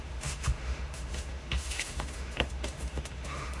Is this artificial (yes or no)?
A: yes